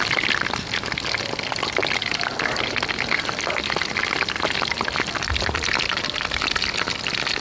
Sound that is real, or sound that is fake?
real